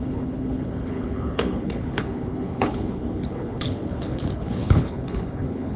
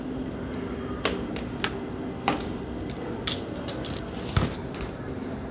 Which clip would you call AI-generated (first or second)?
first